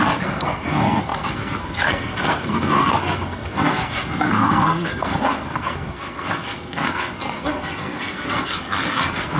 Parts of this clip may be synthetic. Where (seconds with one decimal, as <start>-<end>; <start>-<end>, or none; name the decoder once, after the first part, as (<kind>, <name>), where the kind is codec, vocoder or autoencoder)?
0.0-9.4 (codec, SNAC)